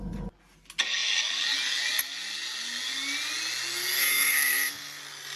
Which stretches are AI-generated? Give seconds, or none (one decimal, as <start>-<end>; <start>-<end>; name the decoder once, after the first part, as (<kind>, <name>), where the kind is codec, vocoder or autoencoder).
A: 4.1-5.0 (codec, SNAC)

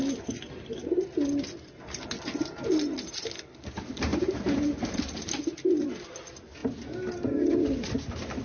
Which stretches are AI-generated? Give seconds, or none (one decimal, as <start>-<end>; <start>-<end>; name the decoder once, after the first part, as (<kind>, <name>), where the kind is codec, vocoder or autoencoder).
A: 4.1-5.2 (vocoder, BigVGAN v2)

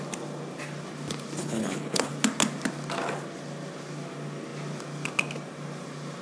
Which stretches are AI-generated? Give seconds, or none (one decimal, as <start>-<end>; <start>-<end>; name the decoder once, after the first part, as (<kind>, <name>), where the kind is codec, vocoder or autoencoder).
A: 1.4-2.1 (codec, HILCodec)

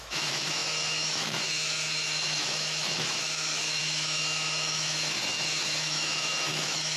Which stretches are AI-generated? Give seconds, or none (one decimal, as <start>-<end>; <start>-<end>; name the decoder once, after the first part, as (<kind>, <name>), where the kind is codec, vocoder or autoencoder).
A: 0.0-7.0 (autoencoder, DAC-VAE)

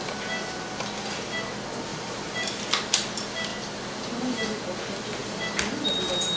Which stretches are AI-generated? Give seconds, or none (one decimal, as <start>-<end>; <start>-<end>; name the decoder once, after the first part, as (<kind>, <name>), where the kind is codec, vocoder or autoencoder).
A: 1.9-2.6 (vocoder, BigVGAN v2); 5.2-6.4

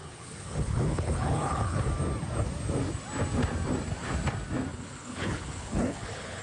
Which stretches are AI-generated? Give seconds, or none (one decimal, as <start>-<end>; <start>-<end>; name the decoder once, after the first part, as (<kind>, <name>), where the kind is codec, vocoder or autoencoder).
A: 0.0-1.9 (codec, HILCodec); 4.7-6.4

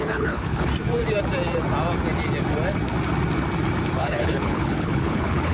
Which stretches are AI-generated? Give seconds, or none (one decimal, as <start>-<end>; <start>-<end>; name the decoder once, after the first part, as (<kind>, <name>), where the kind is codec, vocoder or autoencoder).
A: 0.0-0.7 (codec, HILCodec); 4.0-5.5

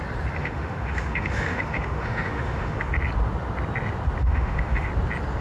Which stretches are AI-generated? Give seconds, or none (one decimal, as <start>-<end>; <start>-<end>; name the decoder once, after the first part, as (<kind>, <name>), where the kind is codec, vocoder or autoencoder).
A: 0.4-2.9 (autoencoder, DAC-VAE); 4.2-4.9